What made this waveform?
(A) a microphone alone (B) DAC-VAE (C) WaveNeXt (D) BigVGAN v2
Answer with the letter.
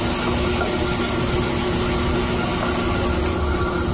A